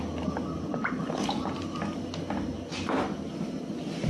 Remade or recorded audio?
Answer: recorded